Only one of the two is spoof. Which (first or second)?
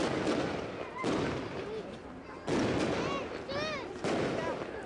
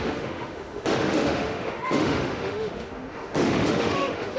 second